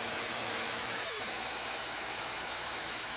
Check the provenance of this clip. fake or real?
fake